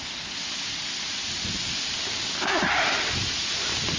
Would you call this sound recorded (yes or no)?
yes